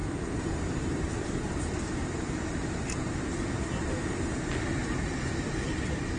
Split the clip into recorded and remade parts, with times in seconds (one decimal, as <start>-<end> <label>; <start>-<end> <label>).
0.0-3.7 remade; 3.7-4.8 recorded; 4.8-5.5 remade; 5.5-6.2 recorded